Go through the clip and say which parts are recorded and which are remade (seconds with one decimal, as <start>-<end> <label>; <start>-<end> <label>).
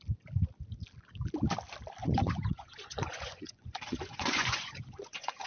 0.0-2.0 recorded; 2.0-5.5 remade